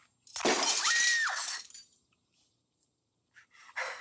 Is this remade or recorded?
recorded